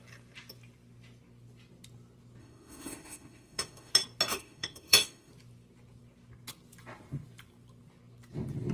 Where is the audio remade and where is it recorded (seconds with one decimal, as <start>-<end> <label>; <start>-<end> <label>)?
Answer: 0.0-2.4 recorded; 2.4-3.9 remade; 3.9-4.3 recorded; 4.3-5.3 remade; 5.3-8.7 recorded